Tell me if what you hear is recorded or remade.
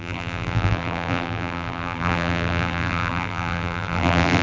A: remade